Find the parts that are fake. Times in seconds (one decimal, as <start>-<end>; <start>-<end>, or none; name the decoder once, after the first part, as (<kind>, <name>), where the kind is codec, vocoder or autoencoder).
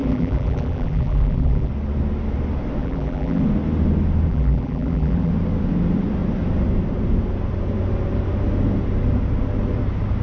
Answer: 0.0-1.7 (vocoder, BigVGAN v2); 2.8-3.4; 4.3-5.3